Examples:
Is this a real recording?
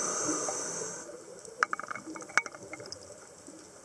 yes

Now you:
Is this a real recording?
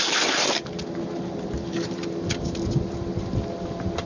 yes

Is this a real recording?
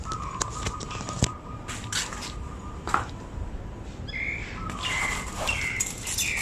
yes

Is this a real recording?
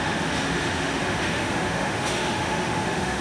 no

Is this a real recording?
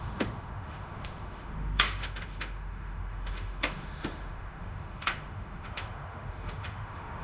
no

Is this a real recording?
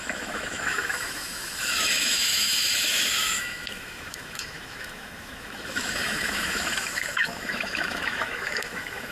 no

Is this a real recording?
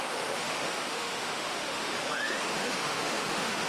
no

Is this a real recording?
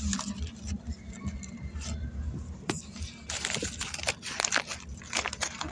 yes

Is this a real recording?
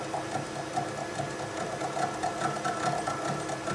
yes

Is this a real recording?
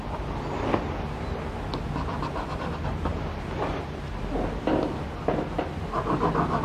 yes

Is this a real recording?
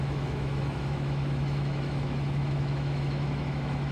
no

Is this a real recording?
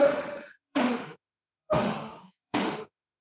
no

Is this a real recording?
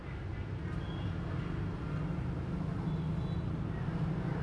yes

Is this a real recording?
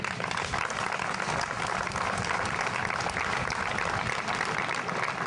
yes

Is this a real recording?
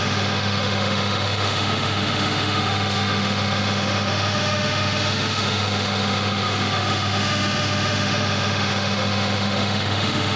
no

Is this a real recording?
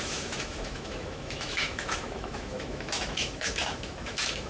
no